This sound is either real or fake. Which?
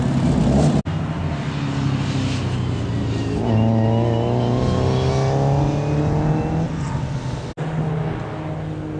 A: real